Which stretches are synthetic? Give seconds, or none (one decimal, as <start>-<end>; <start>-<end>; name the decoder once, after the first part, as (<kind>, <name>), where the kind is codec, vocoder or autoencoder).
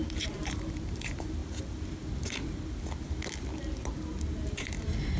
0.0-1.4 (vocoder, BigVGAN v2); 4.3-5.2